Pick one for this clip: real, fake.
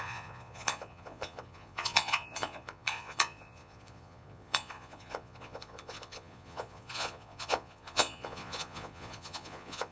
fake